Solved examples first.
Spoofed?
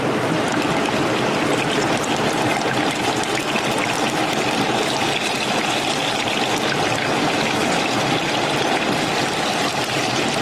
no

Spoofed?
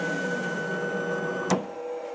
no